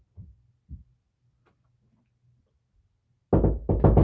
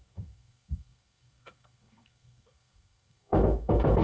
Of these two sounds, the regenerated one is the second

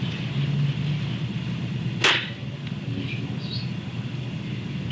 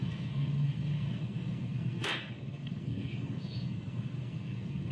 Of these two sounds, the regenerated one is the second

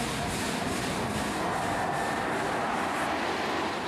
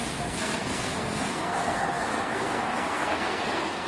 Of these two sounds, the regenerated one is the second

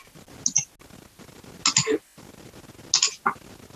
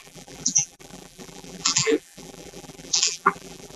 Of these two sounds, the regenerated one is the second